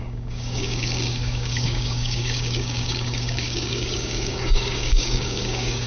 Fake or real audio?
fake